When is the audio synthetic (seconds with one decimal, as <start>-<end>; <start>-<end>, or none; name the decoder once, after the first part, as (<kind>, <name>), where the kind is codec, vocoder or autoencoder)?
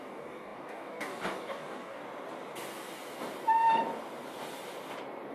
0.0-2.0 (codec, DAC)